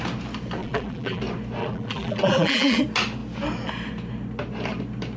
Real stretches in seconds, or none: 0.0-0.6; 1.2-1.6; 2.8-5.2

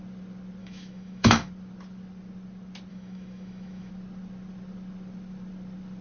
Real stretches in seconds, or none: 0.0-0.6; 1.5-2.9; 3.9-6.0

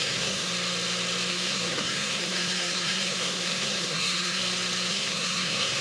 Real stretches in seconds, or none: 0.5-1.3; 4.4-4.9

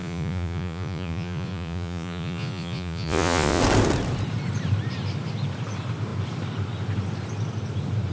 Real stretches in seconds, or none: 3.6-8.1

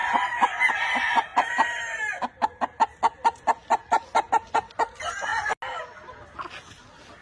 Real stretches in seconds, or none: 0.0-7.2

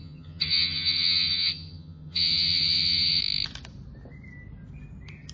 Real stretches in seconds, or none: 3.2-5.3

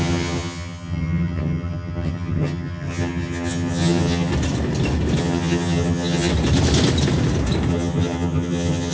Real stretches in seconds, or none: 4.3-5.2; 6.3-7.7

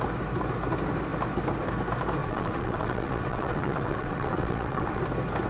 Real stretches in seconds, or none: 0.0-2.2; 5.0-5.5